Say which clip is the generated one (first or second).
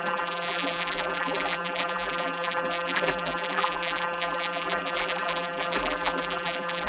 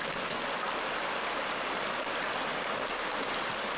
first